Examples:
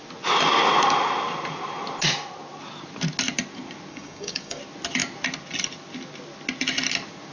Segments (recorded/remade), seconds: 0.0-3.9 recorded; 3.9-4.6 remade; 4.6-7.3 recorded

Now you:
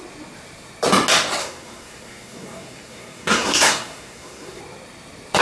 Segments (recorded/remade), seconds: 0.0-1.4 recorded; 1.4-4.6 remade; 4.6-5.4 recorded